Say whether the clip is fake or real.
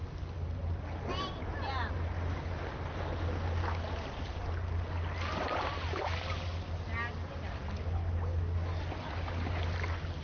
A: real